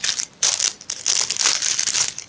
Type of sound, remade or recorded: recorded